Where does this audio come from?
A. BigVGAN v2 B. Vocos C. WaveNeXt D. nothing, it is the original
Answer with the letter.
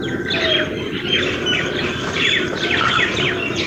D